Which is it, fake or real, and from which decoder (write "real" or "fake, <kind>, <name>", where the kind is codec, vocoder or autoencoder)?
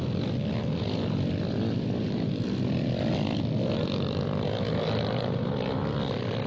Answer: real